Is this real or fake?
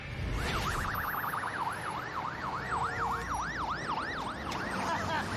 real